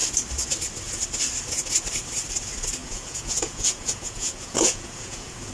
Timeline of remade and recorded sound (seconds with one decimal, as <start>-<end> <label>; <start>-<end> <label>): 0.0-2.8 recorded; 2.8-5.5 remade